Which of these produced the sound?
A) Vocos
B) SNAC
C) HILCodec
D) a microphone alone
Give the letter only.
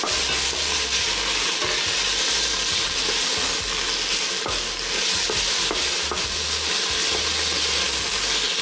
D